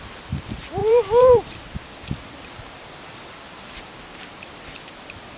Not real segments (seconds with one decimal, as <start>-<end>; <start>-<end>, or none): 0.8-1.6